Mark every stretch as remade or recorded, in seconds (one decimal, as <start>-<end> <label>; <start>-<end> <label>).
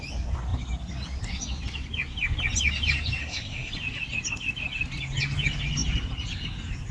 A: 0.0-3.2 recorded; 3.2-3.7 remade; 3.7-6.9 recorded